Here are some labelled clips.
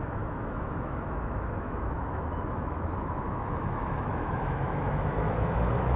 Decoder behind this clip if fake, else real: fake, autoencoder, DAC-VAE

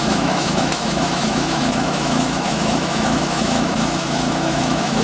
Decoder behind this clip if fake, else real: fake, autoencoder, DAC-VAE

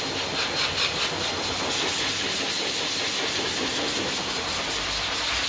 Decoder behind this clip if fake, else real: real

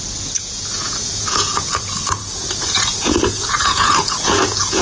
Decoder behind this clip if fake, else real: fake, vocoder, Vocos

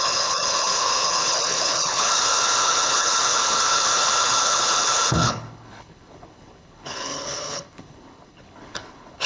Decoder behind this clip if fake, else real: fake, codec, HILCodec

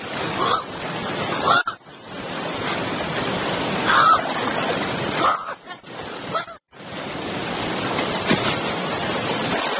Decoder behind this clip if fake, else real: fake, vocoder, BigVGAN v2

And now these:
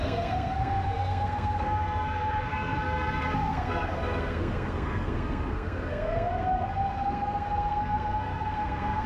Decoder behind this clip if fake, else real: fake, codec, SNAC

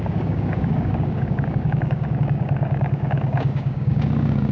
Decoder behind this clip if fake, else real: fake, codec, DAC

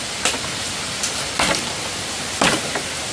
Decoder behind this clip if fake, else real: real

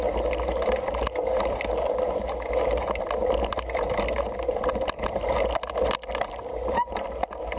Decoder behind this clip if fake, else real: real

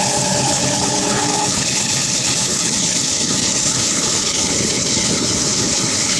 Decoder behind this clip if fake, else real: fake, codec, HILCodec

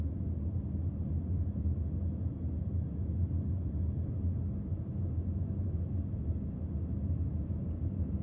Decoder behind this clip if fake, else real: real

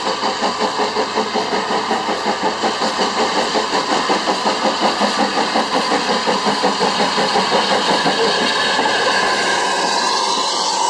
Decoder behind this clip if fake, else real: real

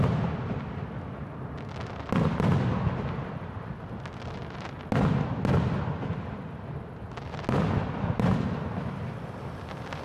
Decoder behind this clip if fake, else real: real